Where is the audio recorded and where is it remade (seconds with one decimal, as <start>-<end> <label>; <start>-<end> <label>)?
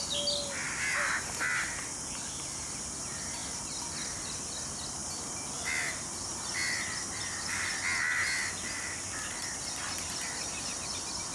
0.0-11.3 recorded